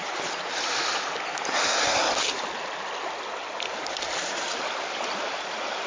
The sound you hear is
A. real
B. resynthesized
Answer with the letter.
A